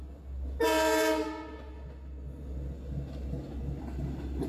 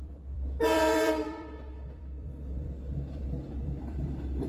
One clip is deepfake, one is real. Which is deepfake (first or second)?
second